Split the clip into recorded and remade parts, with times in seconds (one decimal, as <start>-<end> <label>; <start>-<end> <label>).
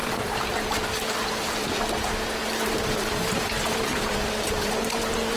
0.0-1.8 remade; 1.8-2.4 recorded; 2.4-5.4 remade